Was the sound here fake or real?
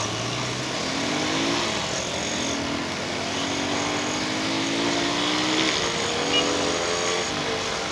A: real